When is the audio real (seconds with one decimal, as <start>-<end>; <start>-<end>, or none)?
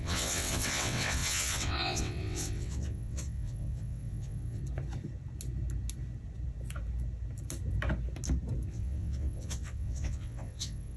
4.6-8.7